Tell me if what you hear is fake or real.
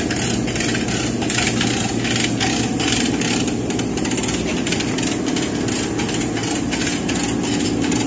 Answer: real